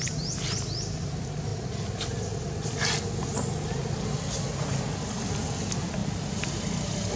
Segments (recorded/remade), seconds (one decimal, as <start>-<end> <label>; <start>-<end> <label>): 0.0-7.2 recorded